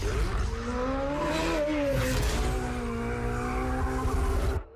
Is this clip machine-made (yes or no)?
no